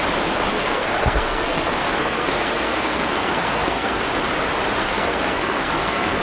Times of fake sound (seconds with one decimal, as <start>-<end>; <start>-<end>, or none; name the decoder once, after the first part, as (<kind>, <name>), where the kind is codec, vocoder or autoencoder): 0.5-4.0 (codec, SNAC); 4.8-6.2